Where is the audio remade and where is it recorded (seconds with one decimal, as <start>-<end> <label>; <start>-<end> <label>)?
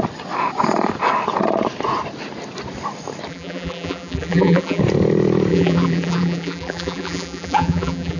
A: 0.0-3.3 recorded; 3.3-4.8 remade; 4.8-5.5 recorded; 5.5-8.2 remade